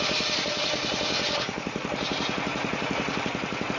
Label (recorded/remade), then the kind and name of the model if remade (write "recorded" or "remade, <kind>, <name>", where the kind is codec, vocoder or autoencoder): remade, vocoder, BigVGAN v2